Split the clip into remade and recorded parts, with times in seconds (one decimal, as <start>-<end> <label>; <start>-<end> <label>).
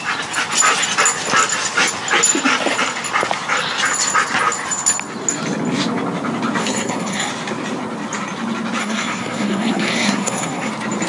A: 0.0-6.6 recorded; 6.6-7.3 remade; 7.3-8.8 recorded; 8.8-10.7 remade; 10.7-11.1 recorded